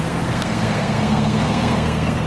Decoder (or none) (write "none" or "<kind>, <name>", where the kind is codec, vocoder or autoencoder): codec, SNAC